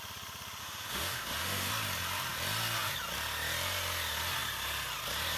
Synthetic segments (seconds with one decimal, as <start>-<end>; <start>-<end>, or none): 0.6-1.7